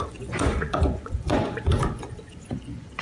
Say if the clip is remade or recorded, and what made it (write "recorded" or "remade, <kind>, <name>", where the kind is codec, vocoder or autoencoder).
remade, vocoder, Vocos